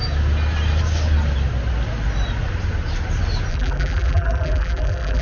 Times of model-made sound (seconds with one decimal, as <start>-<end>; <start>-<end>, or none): 3.5-5.2